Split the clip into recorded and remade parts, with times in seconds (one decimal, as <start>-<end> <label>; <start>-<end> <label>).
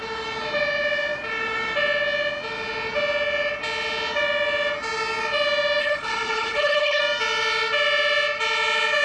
0.0-5.8 recorded; 5.8-7.0 remade; 7.0-9.0 recorded